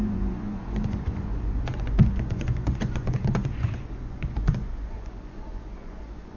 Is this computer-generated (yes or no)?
yes